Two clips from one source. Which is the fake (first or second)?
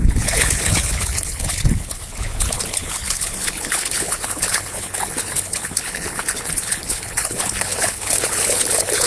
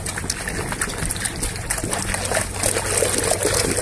first